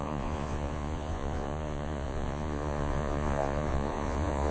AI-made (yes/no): yes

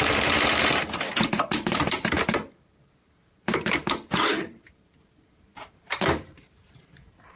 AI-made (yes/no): yes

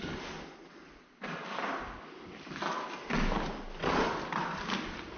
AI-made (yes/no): no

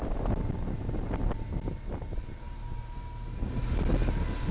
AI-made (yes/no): no